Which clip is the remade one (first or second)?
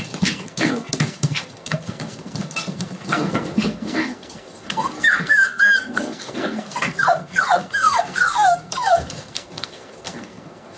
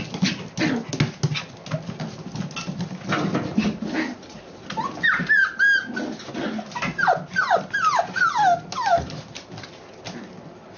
first